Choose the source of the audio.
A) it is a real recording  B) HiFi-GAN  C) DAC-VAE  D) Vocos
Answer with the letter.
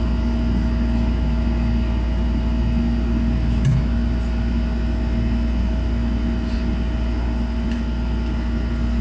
A